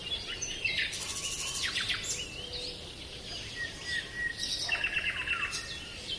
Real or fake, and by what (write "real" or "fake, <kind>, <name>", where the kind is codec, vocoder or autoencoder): real